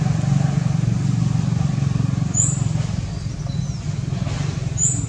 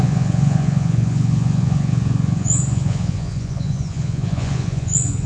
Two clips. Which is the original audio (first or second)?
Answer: first